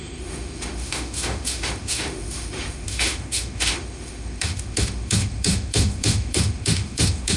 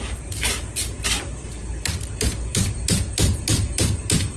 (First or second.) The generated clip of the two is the first